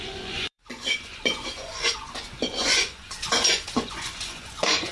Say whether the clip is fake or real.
fake